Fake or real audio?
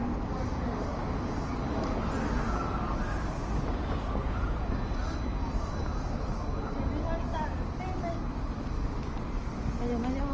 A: real